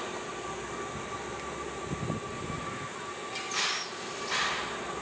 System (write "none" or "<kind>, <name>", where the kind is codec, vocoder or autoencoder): none